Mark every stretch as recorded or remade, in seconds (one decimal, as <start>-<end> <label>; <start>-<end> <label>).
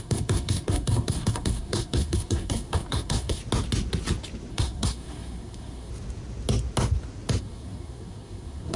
0.0-3.4 remade; 3.4-4.5 recorded; 4.5-5.9 remade; 5.9-7.4 recorded; 7.4-8.8 remade